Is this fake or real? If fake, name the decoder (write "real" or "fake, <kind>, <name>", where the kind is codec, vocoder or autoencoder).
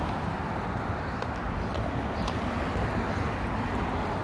real